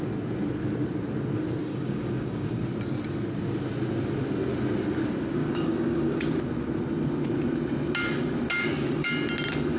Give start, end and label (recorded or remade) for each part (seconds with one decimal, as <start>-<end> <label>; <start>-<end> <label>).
0.0-1.6 recorded; 1.6-2.6 remade; 2.6-5.4 recorded; 5.4-6.2 remade; 6.2-8.5 recorded; 8.5-9.1 remade; 9.1-9.8 recorded

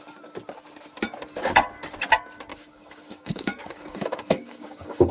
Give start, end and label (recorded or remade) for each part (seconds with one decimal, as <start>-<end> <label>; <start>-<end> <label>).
0.0-2.5 recorded; 2.5-5.1 remade

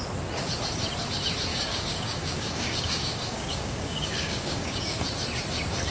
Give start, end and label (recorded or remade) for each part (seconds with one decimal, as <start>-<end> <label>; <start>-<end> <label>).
0.0-1.5 recorded; 1.5-5.0 remade; 5.0-5.9 recorded

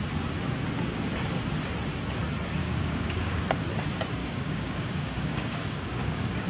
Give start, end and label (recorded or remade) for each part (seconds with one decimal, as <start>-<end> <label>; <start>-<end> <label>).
0.0-2.6 recorded; 2.6-3.4 remade; 3.4-4.2 recorded; 4.2-6.5 remade

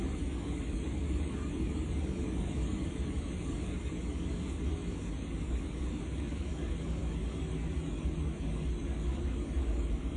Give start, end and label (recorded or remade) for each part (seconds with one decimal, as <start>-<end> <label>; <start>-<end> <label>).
0.0-10.2 remade

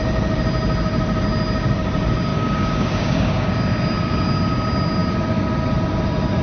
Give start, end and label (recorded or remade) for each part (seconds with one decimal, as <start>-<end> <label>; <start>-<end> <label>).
0.0-2.3 recorded; 2.3-3.5 remade; 3.5-6.4 recorded